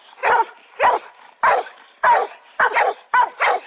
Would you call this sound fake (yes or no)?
no